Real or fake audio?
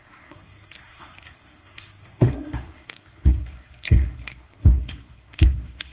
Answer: fake